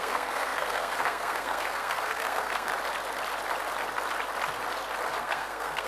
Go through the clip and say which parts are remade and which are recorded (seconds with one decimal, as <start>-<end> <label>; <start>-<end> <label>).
0.0-2.7 remade; 2.7-5.2 recorded; 5.2-5.9 remade

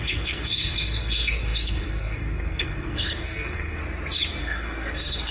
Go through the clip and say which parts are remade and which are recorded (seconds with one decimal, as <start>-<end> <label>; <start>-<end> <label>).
0.0-3.8 remade; 3.8-4.4 recorded; 4.4-5.3 remade